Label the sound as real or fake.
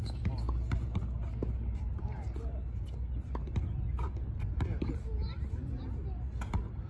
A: real